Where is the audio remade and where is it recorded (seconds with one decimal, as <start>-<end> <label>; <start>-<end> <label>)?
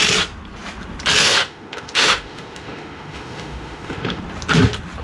0.0-1.2 recorded; 1.2-4.2 remade; 4.2-5.0 recorded